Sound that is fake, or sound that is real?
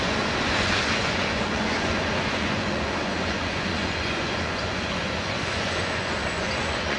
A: fake